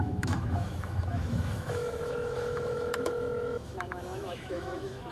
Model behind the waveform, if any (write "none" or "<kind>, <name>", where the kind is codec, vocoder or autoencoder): autoencoder, DAC-VAE